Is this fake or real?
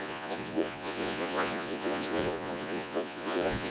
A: fake